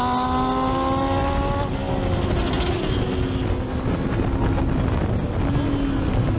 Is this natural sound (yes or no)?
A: yes